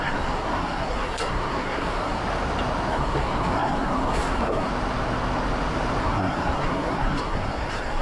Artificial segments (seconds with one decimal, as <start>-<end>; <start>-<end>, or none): 0.0-2.2; 2.9-4.7; 6.0-8.0